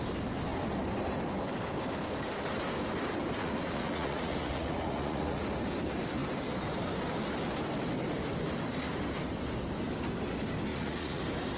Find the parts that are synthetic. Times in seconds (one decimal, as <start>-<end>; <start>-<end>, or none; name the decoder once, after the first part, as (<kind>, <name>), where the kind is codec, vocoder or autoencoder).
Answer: 3.4-5.4 (vocoder, Vocos); 10.7-11.2